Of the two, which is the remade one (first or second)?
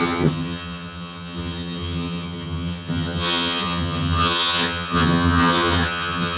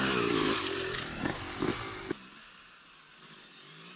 first